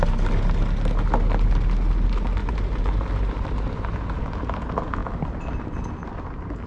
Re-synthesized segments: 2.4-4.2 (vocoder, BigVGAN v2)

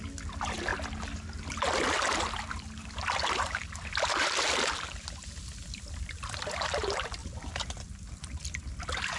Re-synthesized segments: none

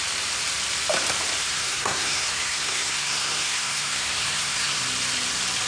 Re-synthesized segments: 1.4-4.8 (codec, SNAC)

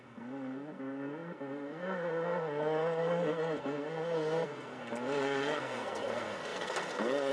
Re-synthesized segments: 0.0-7.3 (codec, SNAC)

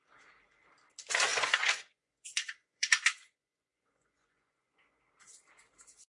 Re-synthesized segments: 1.3-5.0 (vocoder, Vocos)

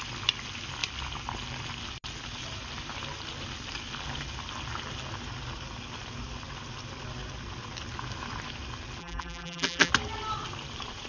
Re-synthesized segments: 9.0-9.9 (vocoder, BigVGAN v2)